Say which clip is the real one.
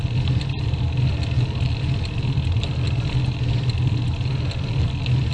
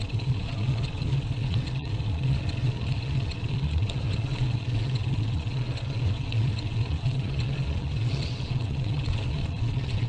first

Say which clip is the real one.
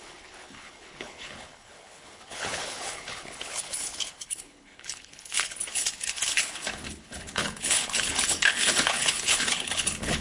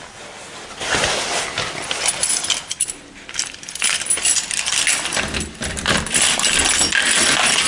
second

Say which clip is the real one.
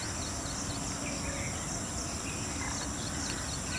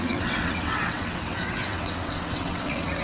first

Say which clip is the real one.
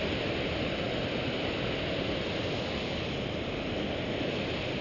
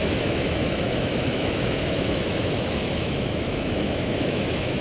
first